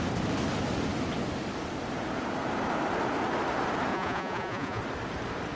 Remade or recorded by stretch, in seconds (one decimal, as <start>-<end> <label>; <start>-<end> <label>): 0.0-3.9 recorded; 3.9-4.8 remade; 4.8-5.6 recorded